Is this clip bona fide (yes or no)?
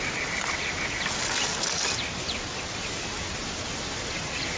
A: yes